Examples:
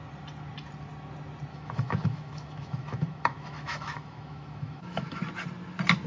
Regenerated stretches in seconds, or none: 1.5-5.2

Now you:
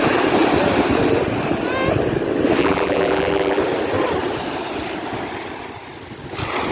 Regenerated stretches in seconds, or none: 2.6-3.6